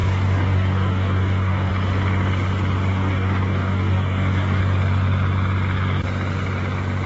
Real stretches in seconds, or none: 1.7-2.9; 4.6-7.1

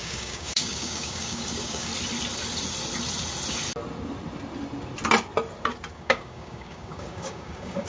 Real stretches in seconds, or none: 1.9-5.9

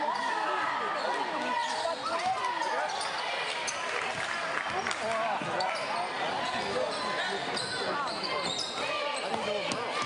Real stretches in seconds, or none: 0.0-10.1

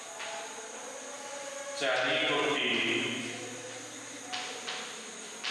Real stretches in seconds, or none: 0.0-5.5

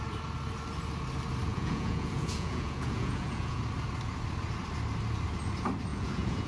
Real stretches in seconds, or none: 0.0-1.5; 3.6-5.9